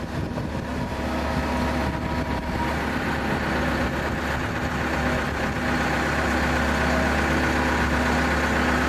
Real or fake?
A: real